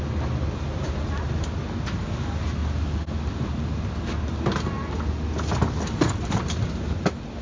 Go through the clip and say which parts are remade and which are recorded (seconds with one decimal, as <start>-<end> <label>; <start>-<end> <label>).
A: 0.0-7.4 recorded